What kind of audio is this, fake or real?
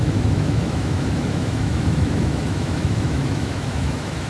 fake